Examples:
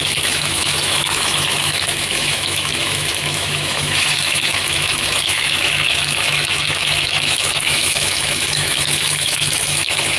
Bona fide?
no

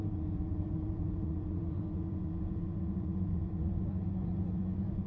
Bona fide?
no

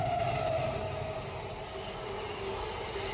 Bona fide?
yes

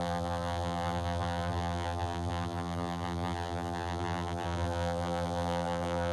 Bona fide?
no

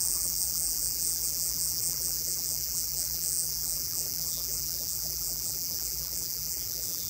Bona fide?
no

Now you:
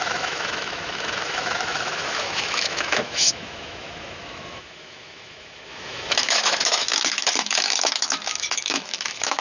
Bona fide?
no